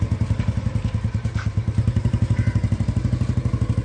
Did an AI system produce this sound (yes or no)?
no